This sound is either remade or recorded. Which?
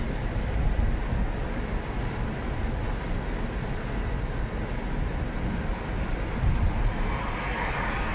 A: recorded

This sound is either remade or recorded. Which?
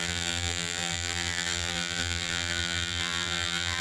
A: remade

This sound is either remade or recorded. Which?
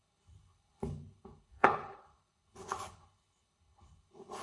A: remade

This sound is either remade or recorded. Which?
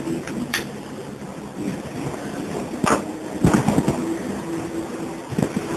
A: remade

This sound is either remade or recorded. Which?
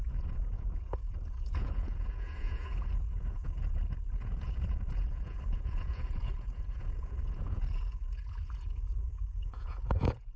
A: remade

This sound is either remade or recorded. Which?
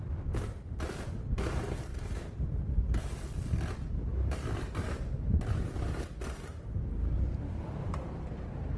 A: remade